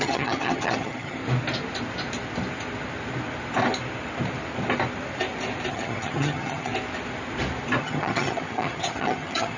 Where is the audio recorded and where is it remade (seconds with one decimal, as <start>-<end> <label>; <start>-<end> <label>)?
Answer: 0.0-1.2 remade; 1.2-5.7 recorded; 5.7-6.7 remade; 6.7-7.8 recorded; 7.8-9.6 remade